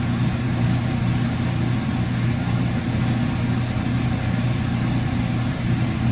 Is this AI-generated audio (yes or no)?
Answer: no